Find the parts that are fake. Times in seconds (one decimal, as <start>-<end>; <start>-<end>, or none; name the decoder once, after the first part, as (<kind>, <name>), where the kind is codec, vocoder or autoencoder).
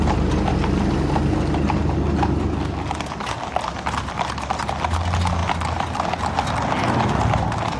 none